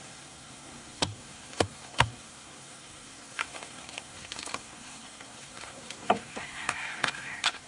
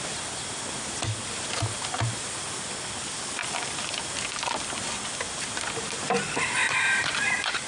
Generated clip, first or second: first